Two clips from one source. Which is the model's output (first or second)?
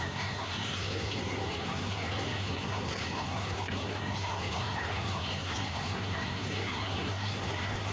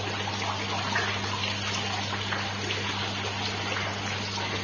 first